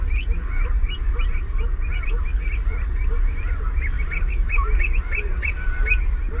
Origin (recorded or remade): recorded